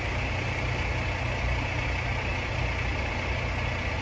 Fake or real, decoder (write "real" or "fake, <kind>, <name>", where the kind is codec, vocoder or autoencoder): real